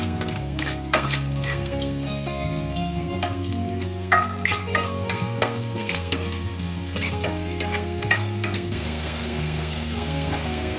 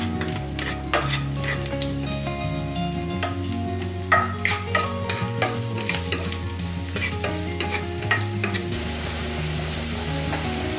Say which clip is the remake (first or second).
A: first